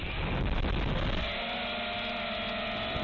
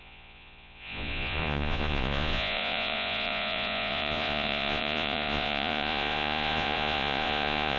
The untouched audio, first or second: first